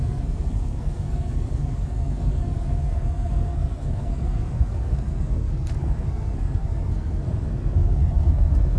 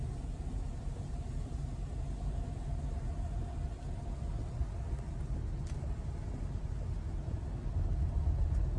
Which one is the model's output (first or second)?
first